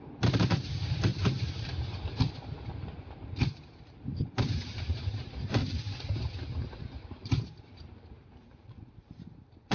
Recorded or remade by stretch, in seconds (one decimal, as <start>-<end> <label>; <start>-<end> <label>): 0.0-5.6 remade; 5.6-6.8 recorded; 6.8-9.7 remade

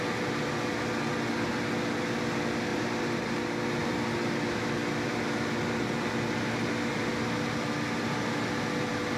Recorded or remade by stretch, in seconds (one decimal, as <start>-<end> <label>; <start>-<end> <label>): 0.0-2.7 recorded; 2.7-3.9 remade; 3.9-9.2 recorded